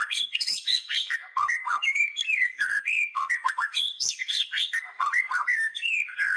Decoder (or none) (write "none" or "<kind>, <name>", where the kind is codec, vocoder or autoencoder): codec, SNAC